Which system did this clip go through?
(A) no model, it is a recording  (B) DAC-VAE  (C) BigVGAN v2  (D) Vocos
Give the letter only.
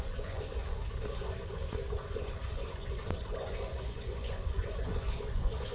D